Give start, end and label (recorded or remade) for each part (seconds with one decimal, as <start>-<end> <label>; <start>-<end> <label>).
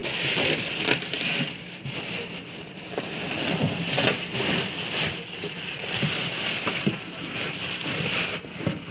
0.0-8.9 recorded